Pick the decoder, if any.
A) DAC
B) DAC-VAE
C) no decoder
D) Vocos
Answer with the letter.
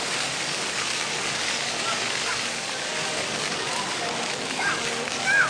A